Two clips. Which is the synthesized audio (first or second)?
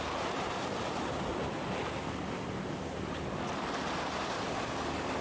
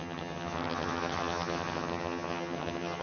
second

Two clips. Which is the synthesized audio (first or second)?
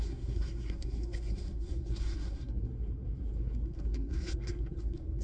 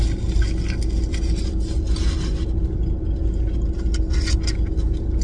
first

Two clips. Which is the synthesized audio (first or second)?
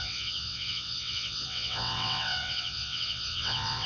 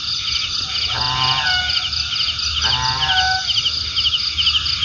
first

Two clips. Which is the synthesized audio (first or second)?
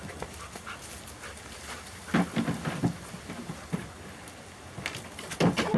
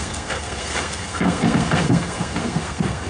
second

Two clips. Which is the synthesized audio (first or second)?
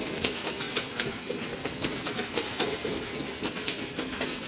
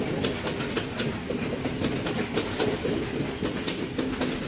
first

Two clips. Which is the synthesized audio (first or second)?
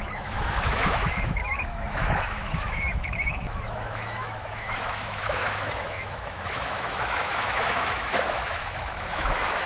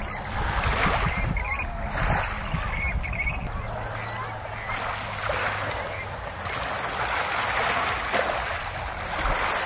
first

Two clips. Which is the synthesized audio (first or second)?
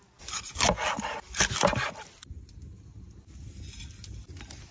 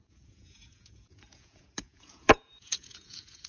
second